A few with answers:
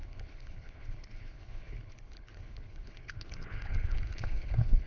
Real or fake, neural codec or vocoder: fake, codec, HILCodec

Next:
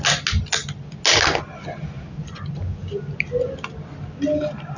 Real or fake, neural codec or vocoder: real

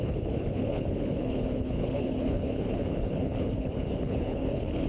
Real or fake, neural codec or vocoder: fake, codec, HILCodec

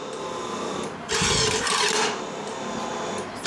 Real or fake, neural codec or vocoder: real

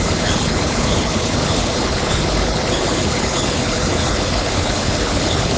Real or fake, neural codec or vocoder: fake, codec, HILCodec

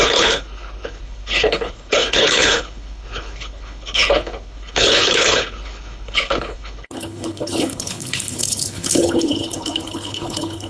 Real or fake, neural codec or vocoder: fake, codec, HILCodec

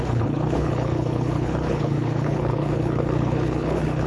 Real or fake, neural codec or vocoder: fake, codec, HILCodec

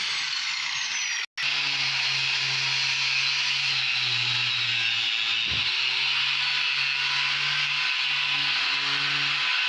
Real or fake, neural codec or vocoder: real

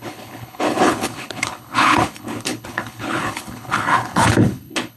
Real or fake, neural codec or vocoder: fake, codec, HILCodec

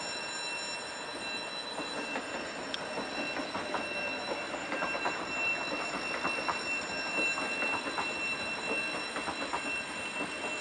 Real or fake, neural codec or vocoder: real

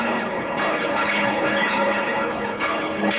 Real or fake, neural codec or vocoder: fake, codec, HILCodec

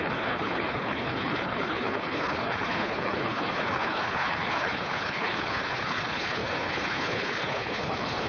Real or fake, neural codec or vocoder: fake, codec, HILCodec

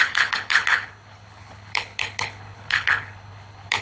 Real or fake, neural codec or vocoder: fake, codec, HILCodec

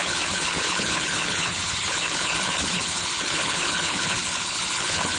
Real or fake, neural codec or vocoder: fake, codec, HILCodec